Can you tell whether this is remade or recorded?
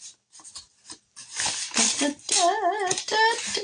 recorded